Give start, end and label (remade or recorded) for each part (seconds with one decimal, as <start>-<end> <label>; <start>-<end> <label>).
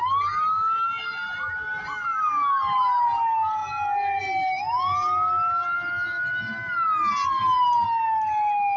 0.0-8.8 recorded